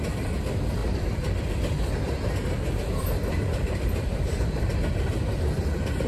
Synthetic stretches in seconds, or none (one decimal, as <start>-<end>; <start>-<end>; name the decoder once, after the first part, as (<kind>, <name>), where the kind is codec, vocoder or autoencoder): 0.8-1.4 (vocoder, BigVGAN v2); 2.4-4.7